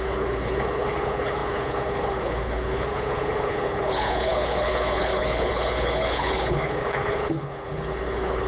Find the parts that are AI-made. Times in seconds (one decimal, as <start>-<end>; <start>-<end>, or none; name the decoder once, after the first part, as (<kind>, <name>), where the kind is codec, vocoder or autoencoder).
0.0-8.5 (codec, HILCodec)